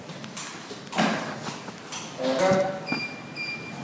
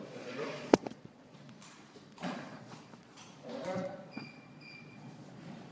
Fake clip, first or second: second